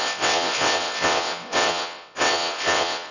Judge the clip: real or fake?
fake